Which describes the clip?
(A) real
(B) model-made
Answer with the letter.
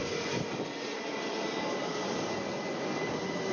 A